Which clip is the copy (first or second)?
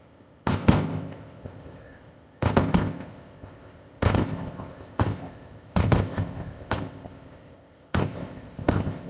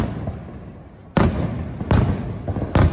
first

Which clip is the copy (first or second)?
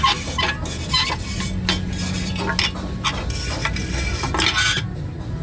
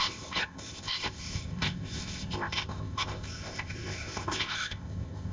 second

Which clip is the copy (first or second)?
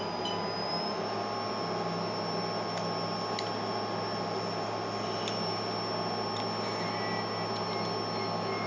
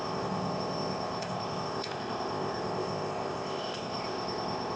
second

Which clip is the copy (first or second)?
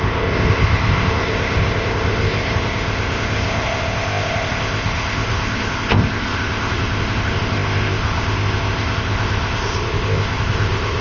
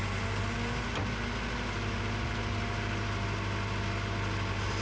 first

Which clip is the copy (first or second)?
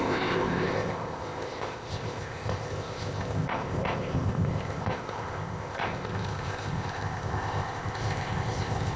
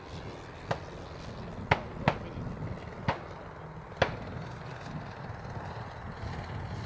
first